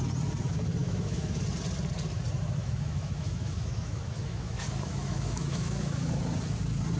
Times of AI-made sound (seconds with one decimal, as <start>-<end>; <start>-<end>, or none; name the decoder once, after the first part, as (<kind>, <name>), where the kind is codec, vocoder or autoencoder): 0.8-1.4 (autoencoder, DAC-VAE); 2.6-6.1